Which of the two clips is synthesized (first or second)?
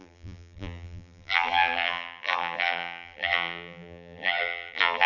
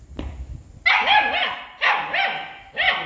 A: first